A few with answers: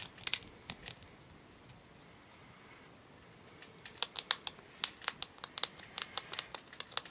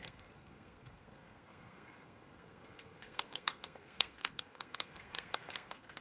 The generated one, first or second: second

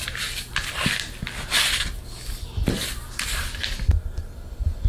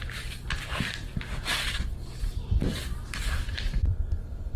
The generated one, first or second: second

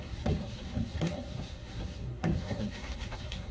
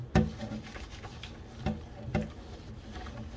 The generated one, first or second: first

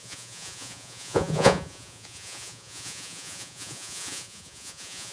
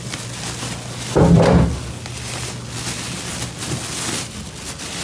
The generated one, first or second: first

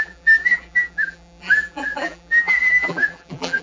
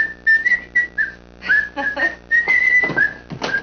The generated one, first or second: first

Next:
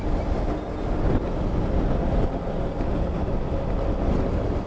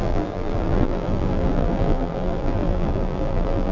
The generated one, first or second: second